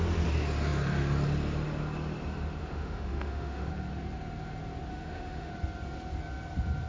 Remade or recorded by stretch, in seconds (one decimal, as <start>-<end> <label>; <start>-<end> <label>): 0.0-2.6 recorded; 2.6-3.7 remade; 3.7-4.9 recorded; 4.9-5.5 remade; 5.5-6.9 recorded